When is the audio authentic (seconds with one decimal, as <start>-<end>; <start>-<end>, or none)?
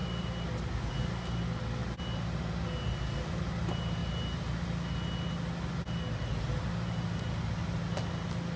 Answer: 0.0-8.6